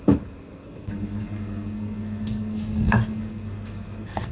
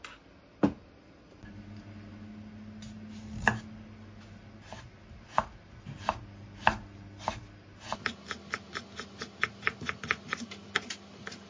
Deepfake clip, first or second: first